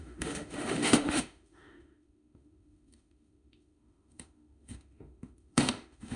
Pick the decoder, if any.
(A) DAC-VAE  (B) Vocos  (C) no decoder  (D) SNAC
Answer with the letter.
A